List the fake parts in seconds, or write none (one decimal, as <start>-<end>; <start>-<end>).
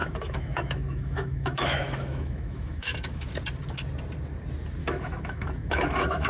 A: 0.0-3.3; 4.8-6.3